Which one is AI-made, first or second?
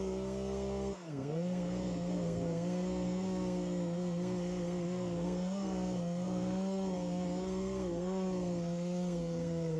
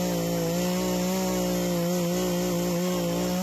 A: first